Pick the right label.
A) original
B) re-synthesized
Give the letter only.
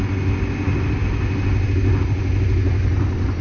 A